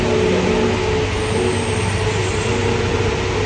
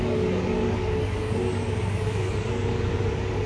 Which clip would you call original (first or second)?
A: first